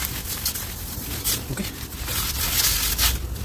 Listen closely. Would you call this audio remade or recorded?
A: recorded